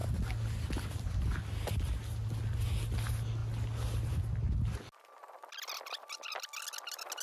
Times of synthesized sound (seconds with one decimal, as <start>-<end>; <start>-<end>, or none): none